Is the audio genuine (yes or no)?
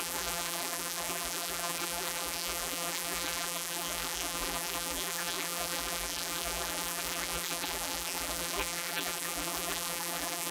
no